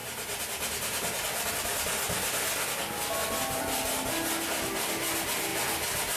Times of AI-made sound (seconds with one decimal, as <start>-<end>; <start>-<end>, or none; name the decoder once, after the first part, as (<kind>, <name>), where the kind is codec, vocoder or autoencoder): none